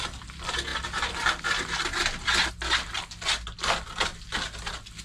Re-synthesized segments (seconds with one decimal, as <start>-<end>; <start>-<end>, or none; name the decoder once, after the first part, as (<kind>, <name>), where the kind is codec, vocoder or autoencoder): none